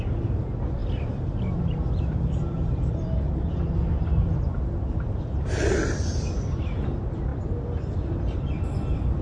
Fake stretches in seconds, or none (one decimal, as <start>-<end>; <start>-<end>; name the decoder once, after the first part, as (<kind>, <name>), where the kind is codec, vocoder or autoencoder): 0.8-3.4 (vocoder, BigVGAN v2); 7.3-8.5